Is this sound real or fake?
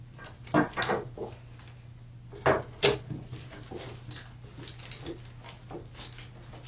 real